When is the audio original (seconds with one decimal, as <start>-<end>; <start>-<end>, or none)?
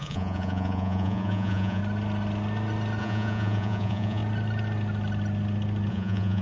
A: 1.8-3.0; 4.2-5.9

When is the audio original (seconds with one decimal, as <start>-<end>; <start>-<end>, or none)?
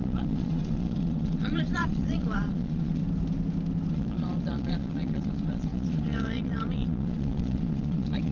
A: 3.0-3.9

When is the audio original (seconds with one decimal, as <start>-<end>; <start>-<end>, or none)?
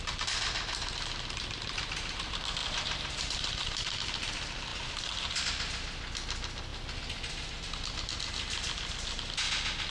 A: 0.0-2.6; 4.0-4.7; 5.4-9.9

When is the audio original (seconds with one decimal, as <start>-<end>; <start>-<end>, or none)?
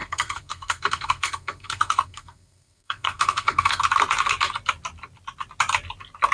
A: 3.8-6.3